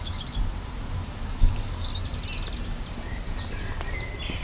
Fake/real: real